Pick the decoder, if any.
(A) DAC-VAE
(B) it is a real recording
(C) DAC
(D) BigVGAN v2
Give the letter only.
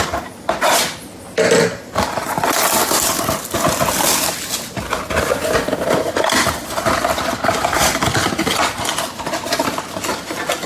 B